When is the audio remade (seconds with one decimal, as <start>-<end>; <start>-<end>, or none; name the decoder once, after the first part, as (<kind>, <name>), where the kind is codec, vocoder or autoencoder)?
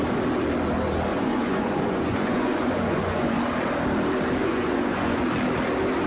1.1-3.4 (vocoder, Vocos); 4.4-5.2